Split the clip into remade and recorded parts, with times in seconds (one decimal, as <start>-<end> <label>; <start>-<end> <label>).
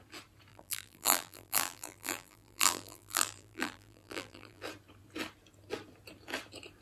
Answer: 0.0-0.5 recorded; 0.5-4.6 remade; 4.6-6.8 recorded